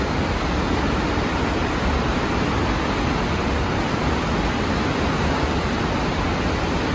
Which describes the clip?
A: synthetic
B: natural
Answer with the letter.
B